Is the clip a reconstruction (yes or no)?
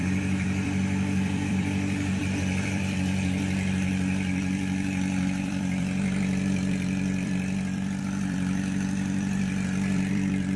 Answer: yes